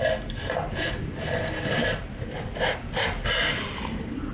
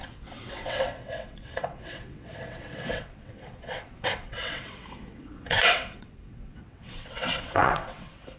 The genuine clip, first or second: first